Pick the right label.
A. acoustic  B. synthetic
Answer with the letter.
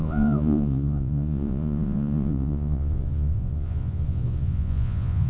B